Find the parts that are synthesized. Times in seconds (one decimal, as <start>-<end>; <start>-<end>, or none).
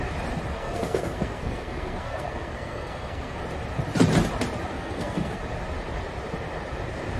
0.5-3.4; 4.7-5.4